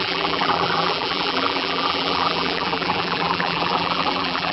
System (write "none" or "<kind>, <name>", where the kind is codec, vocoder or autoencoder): vocoder, BigVGAN v2